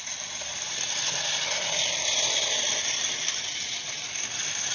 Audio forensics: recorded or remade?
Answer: recorded